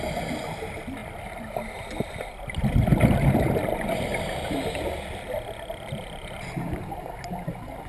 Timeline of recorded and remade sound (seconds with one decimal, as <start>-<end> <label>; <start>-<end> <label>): 0.0-7.9 recorded